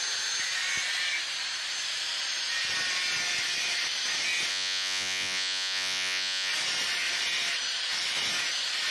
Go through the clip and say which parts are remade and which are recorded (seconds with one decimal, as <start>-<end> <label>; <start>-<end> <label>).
0.0-4.5 recorded; 4.5-6.5 remade; 6.5-8.9 recorded

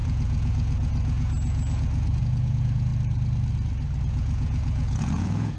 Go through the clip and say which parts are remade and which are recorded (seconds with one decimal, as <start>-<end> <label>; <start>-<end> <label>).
0.0-2.9 remade; 2.9-4.0 recorded; 4.0-5.6 remade

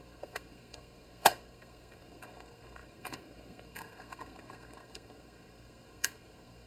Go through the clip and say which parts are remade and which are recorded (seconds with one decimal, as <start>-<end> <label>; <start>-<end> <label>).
0.0-6.7 remade

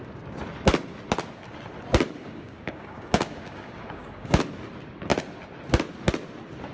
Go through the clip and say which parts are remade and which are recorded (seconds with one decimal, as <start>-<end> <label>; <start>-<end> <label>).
0.0-2.2 recorded; 2.2-4.4 remade; 4.4-6.7 recorded

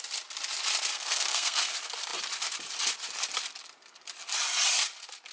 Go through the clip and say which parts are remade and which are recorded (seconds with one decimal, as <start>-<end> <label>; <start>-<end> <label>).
0.0-0.9 recorded; 0.9-1.7 remade; 1.7-5.3 recorded